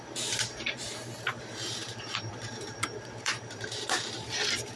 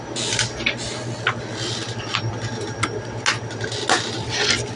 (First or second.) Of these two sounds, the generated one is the first